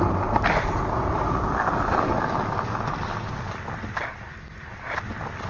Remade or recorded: recorded